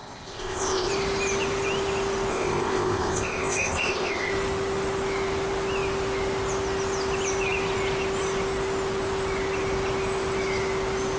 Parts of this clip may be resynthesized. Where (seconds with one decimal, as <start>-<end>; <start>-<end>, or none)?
0.0-0.9; 2.3-4.3